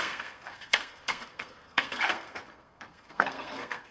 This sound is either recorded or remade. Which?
remade